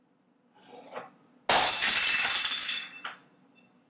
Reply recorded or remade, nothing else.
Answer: recorded